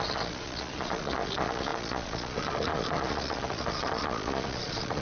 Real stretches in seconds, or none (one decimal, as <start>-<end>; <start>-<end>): none